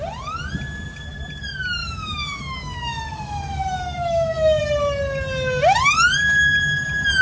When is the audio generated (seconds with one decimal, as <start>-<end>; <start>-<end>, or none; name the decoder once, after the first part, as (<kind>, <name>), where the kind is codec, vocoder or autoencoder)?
1.8-4.6 (autoencoder, DAC-VAE)